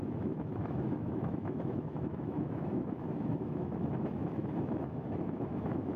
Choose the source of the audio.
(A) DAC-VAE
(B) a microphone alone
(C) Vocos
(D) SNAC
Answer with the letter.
A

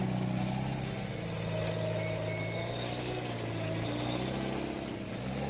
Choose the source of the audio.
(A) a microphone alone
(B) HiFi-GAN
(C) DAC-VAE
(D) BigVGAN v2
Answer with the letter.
A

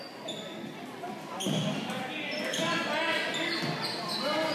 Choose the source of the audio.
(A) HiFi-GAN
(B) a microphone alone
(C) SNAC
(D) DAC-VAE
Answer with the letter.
B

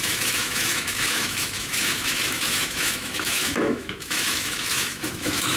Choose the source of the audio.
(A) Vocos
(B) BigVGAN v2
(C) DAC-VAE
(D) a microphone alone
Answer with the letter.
C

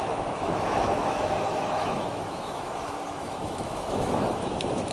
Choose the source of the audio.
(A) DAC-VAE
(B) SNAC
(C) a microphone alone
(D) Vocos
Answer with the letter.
A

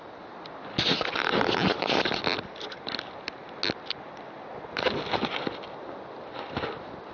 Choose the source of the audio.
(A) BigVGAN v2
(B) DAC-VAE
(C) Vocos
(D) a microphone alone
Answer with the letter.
D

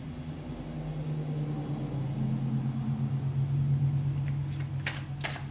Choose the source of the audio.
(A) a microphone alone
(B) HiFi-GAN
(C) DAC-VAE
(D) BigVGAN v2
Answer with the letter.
A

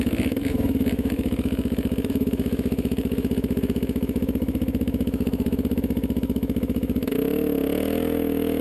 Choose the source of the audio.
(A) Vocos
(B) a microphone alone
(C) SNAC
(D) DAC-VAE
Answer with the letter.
D